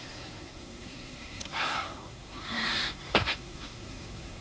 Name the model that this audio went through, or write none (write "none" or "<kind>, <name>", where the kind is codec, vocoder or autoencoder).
codec, SNAC